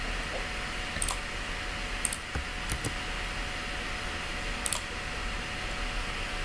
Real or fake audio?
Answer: real